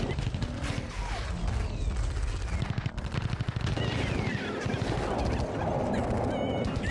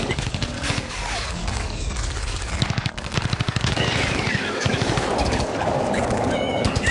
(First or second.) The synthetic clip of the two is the second